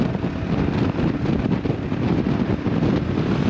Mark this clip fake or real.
real